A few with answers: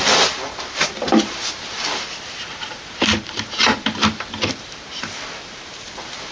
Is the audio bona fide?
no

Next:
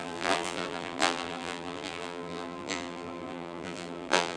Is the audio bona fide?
no